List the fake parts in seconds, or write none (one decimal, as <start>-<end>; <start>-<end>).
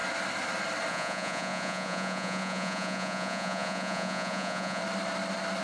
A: 0.9-4.8